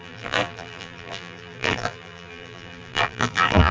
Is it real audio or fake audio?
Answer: fake